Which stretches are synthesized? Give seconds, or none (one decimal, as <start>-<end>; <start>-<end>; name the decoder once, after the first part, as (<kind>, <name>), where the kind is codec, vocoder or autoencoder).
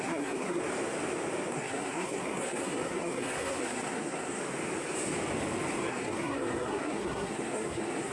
0.0-0.6 (codec, SNAC); 1.5-4.4; 5.9-8.1